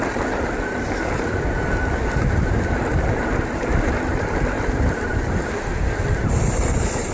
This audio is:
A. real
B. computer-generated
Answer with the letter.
A